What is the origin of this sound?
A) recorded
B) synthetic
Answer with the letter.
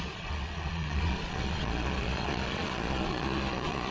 B